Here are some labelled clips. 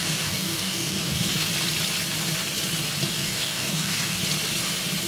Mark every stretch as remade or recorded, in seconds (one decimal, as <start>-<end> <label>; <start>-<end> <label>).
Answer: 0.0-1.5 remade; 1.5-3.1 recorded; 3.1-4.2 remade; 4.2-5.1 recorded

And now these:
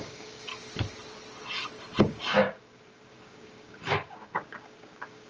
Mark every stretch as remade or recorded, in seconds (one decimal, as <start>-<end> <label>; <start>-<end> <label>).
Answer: 0.0-0.5 remade; 0.5-2.0 recorded; 2.0-5.3 remade

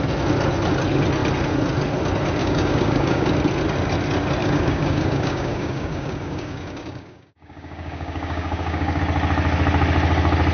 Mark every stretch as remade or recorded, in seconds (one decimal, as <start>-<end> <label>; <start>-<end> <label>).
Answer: 0.0-2.4 recorded; 2.4-3.3 remade; 3.3-4.4 recorded; 4.4-9.0 remade; 9.0-10.5 recorded

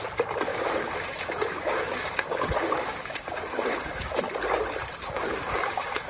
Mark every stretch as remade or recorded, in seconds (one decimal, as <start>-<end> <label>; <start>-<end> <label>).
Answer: 0.0-0.5 recorded; 0.5-4.2 remade; 4.2-5.0 recorded; 5.0-6.1 remade

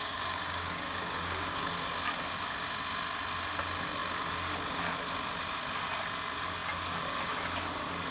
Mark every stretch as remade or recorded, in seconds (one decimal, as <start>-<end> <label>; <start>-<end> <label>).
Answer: 0.0-1.7 remade; 1.7-8.1 recorded